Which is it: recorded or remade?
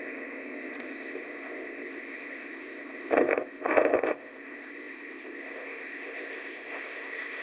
remade